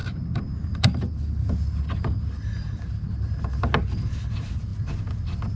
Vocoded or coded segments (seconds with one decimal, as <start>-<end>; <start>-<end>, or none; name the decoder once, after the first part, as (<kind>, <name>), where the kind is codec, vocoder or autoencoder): none